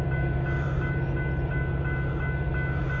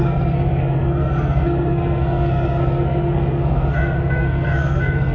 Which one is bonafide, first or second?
first